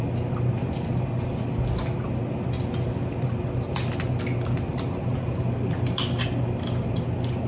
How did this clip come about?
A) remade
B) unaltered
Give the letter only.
B